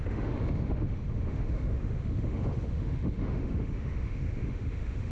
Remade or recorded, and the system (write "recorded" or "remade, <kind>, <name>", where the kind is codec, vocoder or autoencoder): remade, autoencoder, DAC-VAE